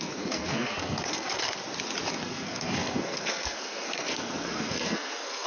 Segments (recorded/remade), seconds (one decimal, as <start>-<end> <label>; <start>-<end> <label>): 0.0-1.6 remade; 1.6-2.1 recorded; 2.1-5.5 remade